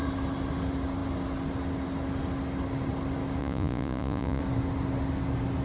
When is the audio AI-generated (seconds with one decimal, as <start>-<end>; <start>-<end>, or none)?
3.4-4.4